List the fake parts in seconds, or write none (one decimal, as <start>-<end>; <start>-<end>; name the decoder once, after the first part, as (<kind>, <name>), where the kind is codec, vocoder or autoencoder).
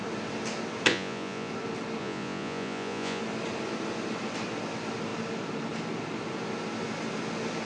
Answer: 0.9-1.5 (vocoder, Vocos); 2.0-3.2